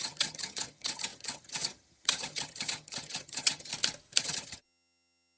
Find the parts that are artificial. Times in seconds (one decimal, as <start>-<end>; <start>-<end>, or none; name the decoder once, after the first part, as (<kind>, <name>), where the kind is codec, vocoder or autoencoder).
0.0-3.7 (vocoder, HiFi-GAN); 4.2-5.4